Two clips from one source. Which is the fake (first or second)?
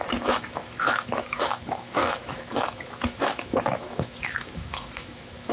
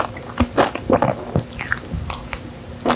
first